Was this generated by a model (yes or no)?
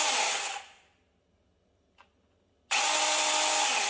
no